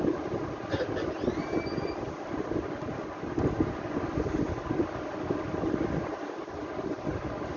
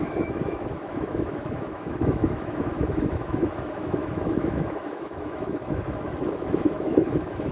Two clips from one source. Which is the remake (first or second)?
second